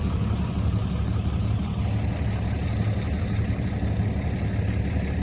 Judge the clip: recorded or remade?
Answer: recorded